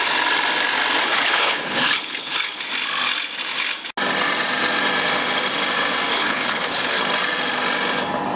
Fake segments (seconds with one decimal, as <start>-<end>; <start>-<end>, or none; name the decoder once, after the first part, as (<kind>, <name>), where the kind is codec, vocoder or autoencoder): 1.0-2.6 (codec, HILCodec); 6.1-7.0